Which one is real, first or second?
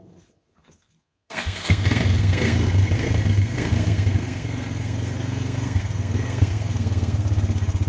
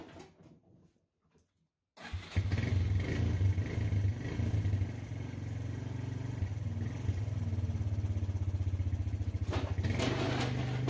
second